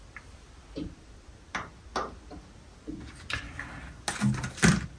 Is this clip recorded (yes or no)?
yes